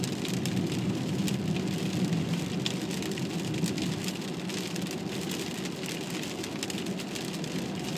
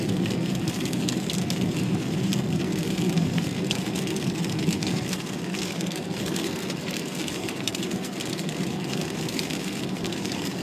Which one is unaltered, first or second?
first